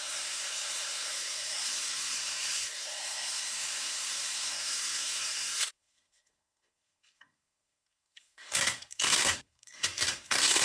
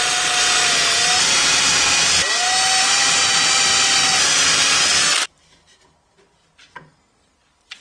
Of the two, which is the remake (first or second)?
first